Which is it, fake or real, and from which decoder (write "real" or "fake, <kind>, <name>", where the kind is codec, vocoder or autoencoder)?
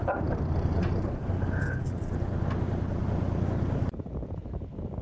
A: real